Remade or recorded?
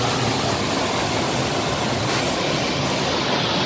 recorded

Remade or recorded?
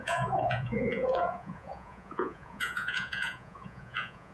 remade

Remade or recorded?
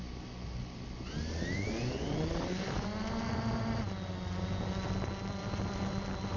recorded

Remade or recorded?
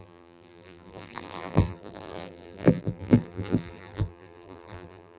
remade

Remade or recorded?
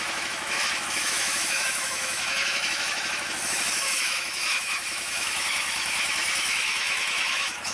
remade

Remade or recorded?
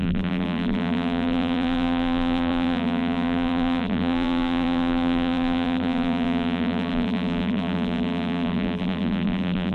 remade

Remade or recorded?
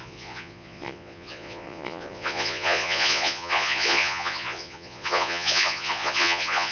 remade